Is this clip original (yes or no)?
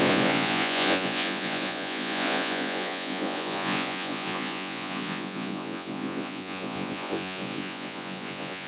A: no